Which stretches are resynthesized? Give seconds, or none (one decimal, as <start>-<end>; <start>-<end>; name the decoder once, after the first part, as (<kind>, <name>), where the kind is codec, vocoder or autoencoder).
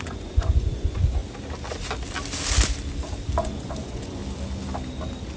0.0-1.2 (vocoder, Vocos); 3.4-4.2